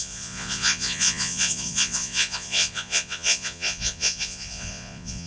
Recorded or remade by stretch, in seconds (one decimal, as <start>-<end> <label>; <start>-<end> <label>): 0.0-5.3 remade